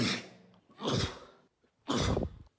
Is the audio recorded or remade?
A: recorded